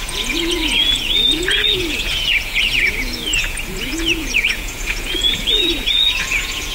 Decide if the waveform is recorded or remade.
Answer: remade